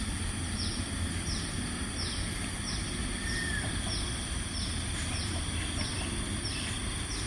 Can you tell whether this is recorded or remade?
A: recorded